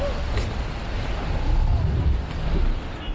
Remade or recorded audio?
recorded